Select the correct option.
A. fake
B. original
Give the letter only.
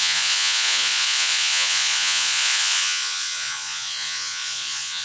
A